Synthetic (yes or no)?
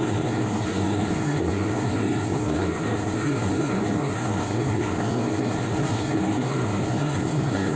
yes